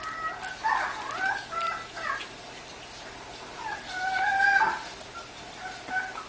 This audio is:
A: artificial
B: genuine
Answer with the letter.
B